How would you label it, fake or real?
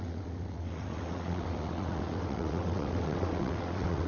fake